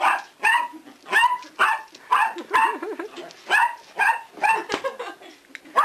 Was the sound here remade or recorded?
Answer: recorded